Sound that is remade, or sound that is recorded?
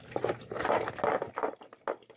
recorded